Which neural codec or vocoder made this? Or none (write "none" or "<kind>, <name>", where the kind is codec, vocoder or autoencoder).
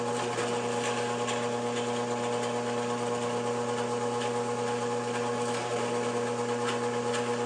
none